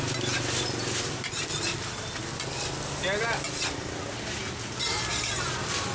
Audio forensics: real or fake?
real